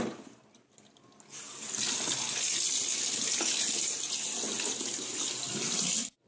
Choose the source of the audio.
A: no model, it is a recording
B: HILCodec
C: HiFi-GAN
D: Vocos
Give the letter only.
A